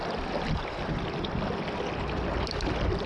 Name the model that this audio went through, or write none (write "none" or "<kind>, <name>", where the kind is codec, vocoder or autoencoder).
none